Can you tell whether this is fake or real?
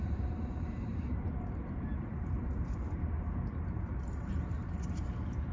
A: fake